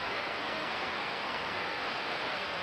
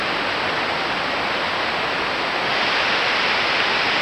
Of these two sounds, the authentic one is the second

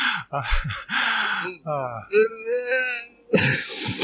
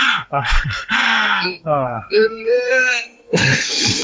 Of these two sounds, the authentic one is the first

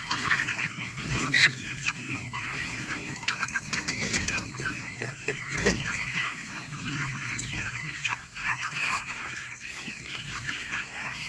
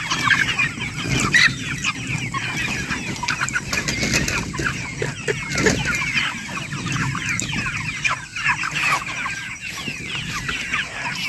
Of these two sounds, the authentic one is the second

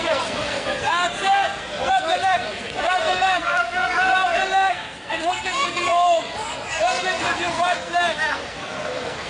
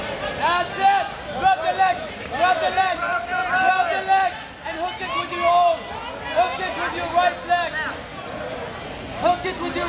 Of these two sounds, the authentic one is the second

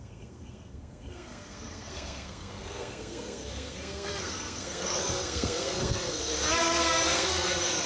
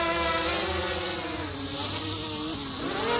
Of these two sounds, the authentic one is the second